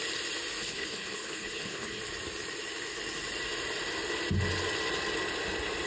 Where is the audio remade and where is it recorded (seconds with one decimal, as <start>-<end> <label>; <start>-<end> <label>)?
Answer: 0.0-0.6 recorded; 0.6-2.0 remade; 2.0-5.9 recorded